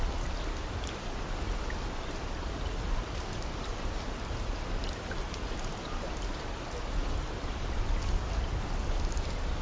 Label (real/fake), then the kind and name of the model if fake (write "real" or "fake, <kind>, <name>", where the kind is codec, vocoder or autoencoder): real